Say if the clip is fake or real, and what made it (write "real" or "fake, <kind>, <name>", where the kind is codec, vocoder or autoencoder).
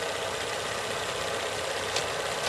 real